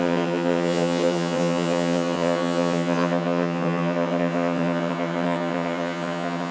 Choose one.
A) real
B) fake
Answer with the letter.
B